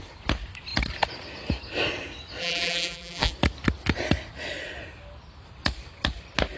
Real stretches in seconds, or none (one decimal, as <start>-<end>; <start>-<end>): 0.0-2.4; 3.3-6.6